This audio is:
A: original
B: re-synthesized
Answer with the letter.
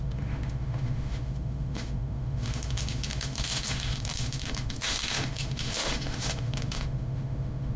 B